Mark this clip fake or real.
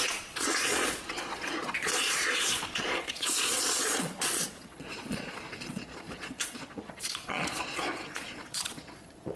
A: fake